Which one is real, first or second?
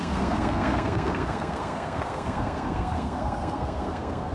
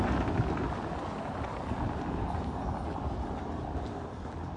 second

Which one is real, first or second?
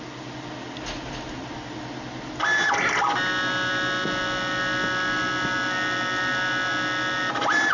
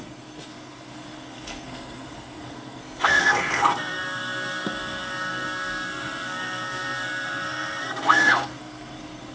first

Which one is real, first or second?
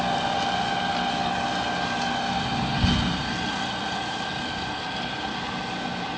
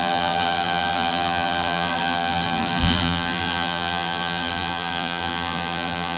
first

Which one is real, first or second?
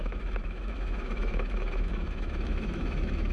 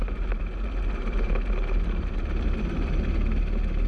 second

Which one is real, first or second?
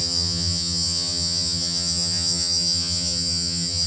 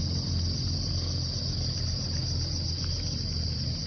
second